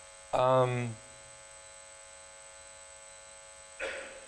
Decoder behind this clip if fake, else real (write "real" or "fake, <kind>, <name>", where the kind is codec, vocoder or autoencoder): real